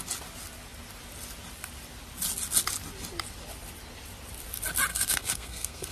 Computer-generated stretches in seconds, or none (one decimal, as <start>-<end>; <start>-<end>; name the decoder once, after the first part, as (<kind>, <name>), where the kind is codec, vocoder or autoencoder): 4.9-5.9 (codec, SNAC)